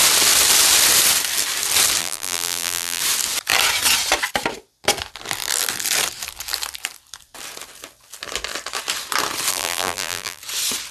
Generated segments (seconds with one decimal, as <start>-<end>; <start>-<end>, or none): 2.0-3.0; 9.5-10.4